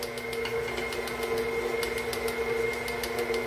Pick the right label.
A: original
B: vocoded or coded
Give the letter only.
A